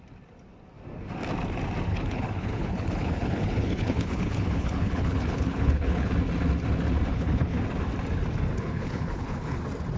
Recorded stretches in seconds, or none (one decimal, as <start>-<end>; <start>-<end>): 0.0-1.9; 6.1-7.1; 7.6-8.5; 9.6-10.0